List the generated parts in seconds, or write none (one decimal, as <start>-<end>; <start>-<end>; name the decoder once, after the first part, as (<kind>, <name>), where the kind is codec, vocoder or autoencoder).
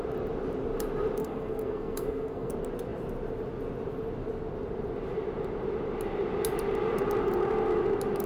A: 1.2-2.5 (codec, SNAC)